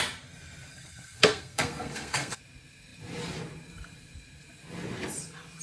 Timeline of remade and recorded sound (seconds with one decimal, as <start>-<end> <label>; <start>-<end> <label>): 0.0-0.7 recorded; 0.7-2.4 remade; 2.4-5.6 recorded